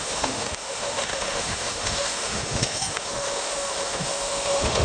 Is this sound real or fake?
fake